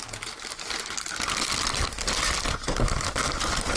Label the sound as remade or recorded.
recorded